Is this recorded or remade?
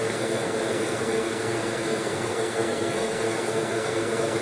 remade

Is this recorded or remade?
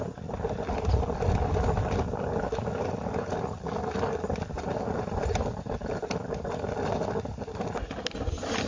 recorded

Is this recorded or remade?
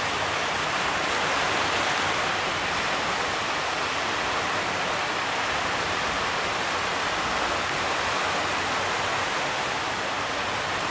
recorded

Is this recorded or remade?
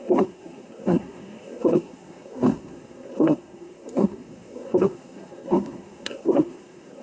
remade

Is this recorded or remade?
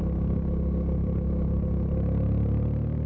recorded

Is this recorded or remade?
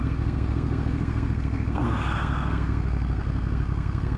remade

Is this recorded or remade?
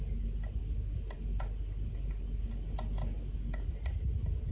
recorded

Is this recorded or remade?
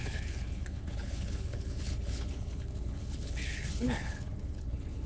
remade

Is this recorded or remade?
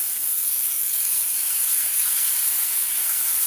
remade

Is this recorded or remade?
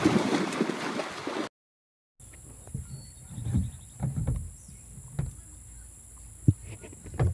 recorded